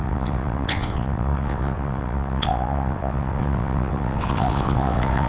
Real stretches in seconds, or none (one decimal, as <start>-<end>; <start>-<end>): none